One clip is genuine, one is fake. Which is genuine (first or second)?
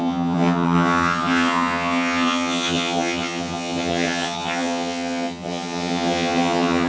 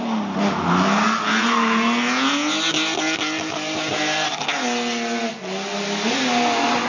second